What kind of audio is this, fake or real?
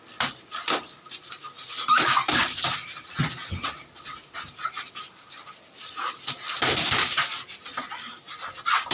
real